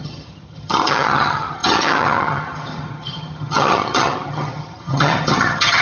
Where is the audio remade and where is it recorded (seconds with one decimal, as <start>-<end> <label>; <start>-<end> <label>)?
0.0-5.8 remade